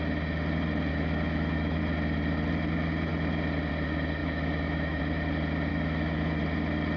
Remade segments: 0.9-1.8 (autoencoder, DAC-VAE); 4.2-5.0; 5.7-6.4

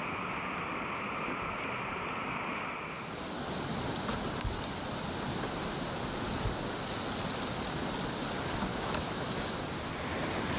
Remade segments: 8.7-9.6 (autoencoder, DAC-VAE)

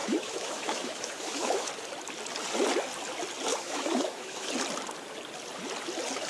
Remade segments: 0.0-1.7 (autoencoder, DAC-VAE); 3.5-4.5

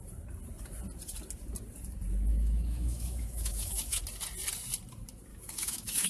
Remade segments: 2.3-4.0 (autoencoder, DAC-VAE); 5.3-6.1